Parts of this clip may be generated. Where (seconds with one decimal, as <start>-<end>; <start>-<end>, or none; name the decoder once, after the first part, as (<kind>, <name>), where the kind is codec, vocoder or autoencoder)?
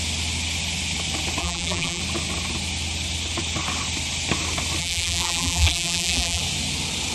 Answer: 1.4-2.0 (vocoder, BigVGAN v2); 4.8-6.4